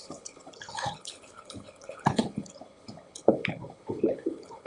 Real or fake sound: fake